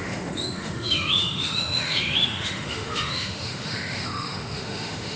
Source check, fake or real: fake